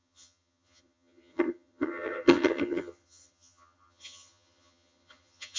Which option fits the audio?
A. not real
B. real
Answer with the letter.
A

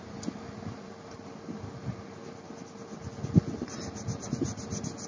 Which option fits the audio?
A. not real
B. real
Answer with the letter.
B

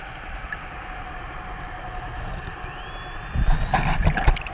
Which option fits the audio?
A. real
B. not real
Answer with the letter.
A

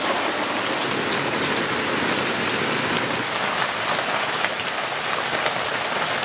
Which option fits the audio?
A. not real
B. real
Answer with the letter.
B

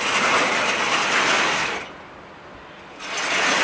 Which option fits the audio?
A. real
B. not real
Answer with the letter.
A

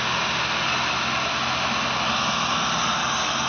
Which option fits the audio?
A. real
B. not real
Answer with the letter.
A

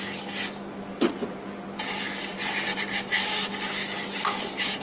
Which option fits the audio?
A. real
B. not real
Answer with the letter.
A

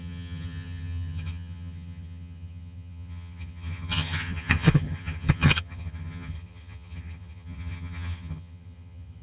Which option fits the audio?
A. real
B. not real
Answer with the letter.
B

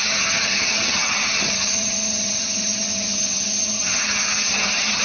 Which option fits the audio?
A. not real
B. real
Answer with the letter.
A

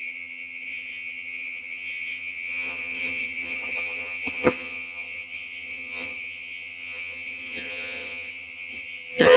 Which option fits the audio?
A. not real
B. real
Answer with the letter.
A